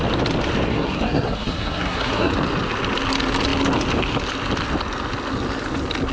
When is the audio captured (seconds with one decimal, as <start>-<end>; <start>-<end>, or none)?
0.0-0.7; 2.3-6.1